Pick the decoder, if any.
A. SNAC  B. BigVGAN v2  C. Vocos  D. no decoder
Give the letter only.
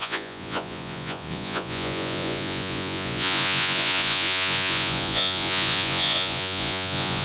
C